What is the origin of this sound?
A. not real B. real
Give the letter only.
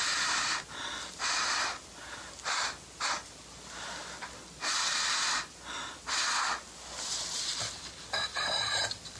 B